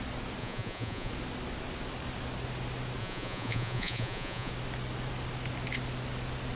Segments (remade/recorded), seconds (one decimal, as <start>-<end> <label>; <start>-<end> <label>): 0.0-0.4 recorded; 0.4-1.1 remade; 1.1-3.0 recorded; 3.0-4.5 remade; 4.5-6.6 recorded